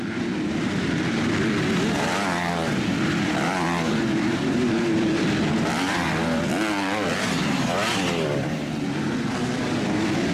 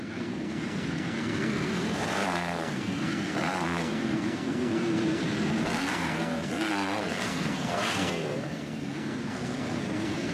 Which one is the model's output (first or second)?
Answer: second